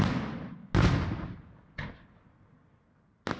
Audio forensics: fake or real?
real